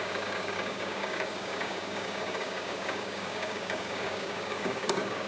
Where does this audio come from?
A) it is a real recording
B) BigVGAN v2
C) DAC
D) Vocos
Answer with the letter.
C